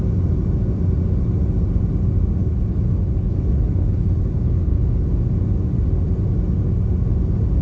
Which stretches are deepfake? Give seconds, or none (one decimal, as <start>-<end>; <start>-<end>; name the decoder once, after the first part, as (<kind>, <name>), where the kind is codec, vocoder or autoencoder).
2.4-5.1 (codec, HILCodec)

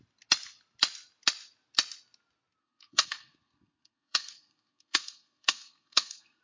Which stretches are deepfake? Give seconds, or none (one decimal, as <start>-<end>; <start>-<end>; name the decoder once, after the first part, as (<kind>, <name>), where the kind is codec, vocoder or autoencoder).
2.6-6.4 (codec, SNAC)